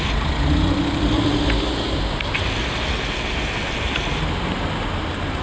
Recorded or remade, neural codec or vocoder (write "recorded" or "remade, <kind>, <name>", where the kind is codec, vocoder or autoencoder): recorded